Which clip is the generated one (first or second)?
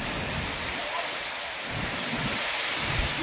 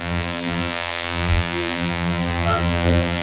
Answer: second